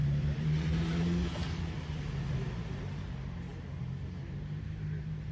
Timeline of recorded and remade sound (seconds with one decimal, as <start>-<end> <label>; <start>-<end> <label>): 0.0-1.0 remade; 1.0-5.3 recorded